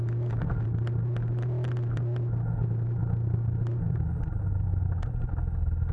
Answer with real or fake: real